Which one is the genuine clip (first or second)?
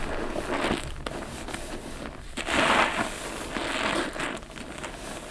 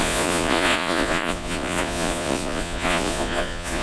first